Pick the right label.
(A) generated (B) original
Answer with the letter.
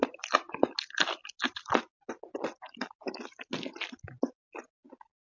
B